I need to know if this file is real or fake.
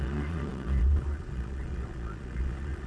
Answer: fake